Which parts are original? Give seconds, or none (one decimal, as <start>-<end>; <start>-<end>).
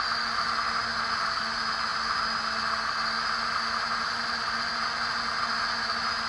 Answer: 0.0-6.3